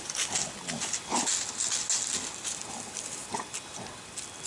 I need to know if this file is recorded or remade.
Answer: recorded